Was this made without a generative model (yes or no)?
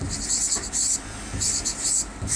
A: yes